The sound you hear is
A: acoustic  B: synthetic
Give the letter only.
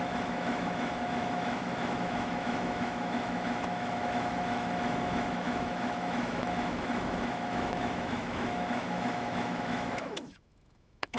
B